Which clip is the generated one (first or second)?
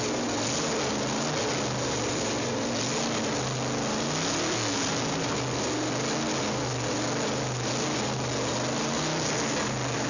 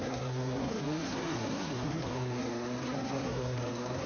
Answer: second